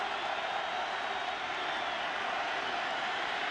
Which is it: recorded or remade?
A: recorded